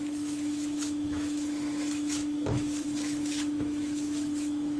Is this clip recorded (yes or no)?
no